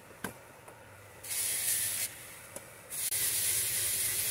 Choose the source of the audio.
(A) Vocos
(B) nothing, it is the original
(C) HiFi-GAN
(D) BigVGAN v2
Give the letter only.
B